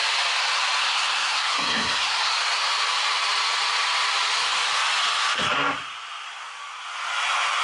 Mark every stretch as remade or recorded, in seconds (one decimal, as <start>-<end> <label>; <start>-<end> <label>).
0.0-0.8 recorded; 0.8-2.3 remade; 2.3-7.6 recorded